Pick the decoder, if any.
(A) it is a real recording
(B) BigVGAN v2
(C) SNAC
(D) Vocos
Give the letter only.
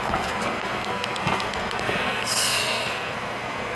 C